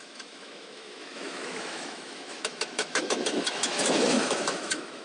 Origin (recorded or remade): remade